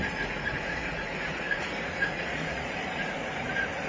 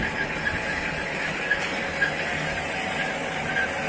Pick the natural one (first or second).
second